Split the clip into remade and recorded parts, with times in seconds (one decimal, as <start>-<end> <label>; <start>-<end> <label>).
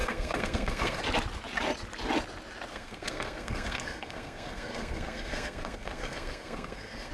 0.0-1.0 remade; 1.0-2.7 recorded; 2.7-7.1 remade